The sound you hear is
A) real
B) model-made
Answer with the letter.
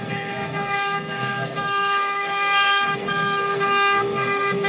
B